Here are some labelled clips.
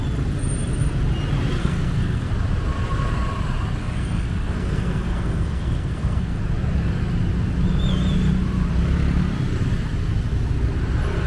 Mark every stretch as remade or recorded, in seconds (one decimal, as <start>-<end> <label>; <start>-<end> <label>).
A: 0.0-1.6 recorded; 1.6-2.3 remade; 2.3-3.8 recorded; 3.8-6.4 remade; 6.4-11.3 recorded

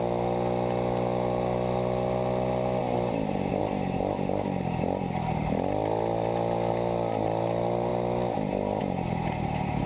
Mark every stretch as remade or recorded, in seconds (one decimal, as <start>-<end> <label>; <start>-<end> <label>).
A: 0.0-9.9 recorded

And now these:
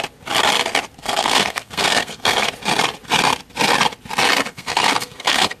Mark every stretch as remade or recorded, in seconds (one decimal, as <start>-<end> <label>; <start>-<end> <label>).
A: 0.0-1.0 recorded; 1.0-2.5 remade; 2.5-4.5 recorded; 4.5-5.6 remade

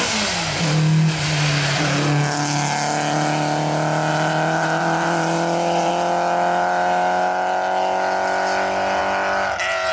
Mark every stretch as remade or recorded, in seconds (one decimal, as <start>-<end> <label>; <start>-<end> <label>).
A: 0.0-4.1 recorded; 4.1-5.9 remade; 5.9-9.9 recorded

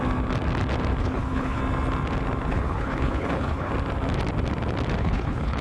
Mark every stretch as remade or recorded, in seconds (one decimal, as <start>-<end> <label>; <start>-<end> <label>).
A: 0.0-1.0 recorded; 1.0-1.6 remade; 1.6-2.5 recorded; 2.5-3.7 remade; 3.7-5.0 recorded; 5.0-5.6 remade

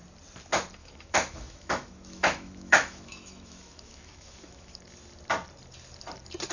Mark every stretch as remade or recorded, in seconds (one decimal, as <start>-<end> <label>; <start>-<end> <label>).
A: 0.0-0.8 recorded; 0.8-4.7 remade; 4.7-6.5 recorded

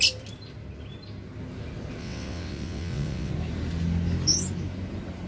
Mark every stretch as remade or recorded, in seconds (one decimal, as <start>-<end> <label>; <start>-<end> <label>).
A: 0.0-2.0 recorded; 2.0-3.3 remade; 3.3-5.3 recorded

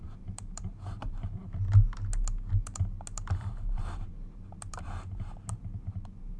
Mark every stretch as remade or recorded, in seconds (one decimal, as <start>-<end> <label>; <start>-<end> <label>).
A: 0.0-1.4 remade; 1.4-3.5 recorded; 3.5-6.4 remade